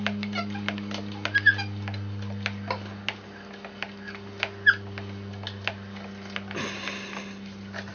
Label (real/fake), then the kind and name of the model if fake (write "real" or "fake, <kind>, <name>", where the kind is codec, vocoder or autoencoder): real